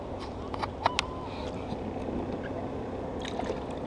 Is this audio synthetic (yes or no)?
no